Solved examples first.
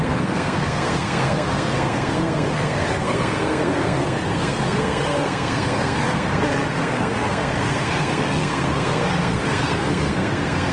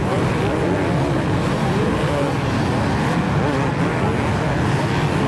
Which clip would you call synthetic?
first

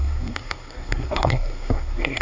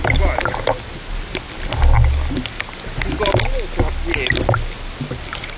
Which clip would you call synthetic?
first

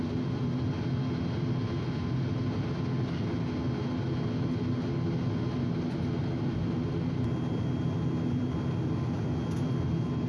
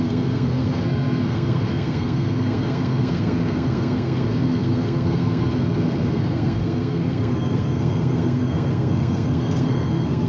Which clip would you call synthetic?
second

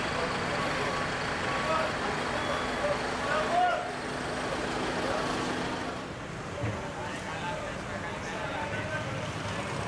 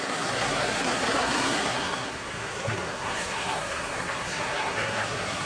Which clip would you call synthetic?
second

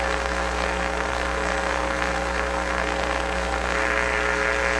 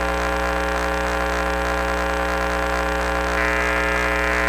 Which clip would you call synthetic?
first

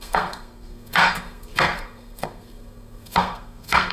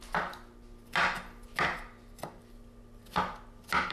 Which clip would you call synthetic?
first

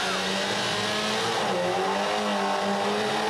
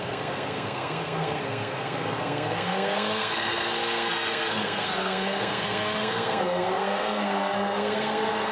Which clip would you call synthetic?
second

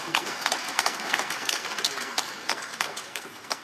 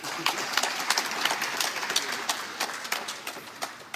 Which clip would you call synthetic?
first